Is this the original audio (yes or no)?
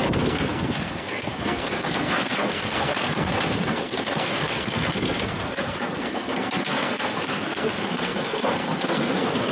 no